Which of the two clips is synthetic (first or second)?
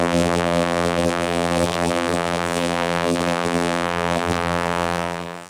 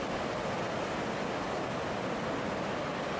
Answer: first